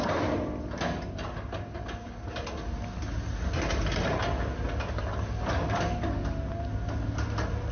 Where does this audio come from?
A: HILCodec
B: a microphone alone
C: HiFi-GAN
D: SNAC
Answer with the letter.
B